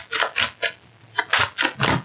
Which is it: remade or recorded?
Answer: recorded